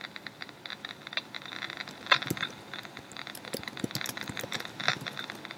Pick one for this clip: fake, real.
real